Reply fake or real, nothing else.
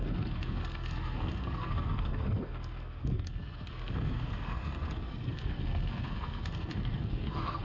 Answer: fake